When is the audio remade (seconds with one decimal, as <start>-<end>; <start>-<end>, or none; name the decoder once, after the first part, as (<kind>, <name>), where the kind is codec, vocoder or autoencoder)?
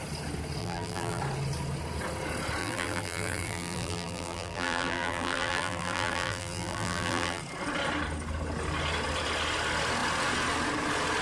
0.6-1.2 (vocoder, BigVGAN v2); 2.6-7.4